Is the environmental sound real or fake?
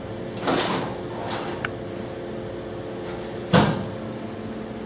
real